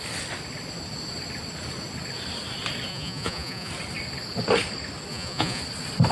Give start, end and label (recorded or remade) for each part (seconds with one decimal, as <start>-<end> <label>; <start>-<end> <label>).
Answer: 0.0-2.9 recorded; 2.9-3.7 remade; 3.7-5.1 recorded; 5.1-5.6 remade; 5.6-6.1 recorded